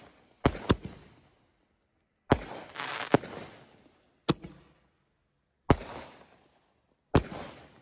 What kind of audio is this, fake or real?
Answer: real